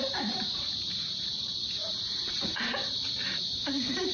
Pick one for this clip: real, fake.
fake